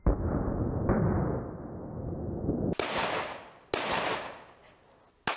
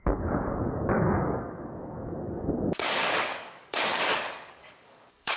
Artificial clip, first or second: second